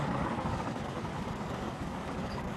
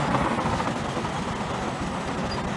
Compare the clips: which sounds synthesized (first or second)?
first